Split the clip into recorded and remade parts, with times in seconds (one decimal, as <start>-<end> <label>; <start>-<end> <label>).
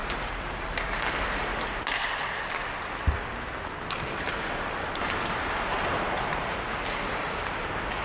0.0-1.5 remade; 1.5-5.0 recorded; 5.0-8.0 remade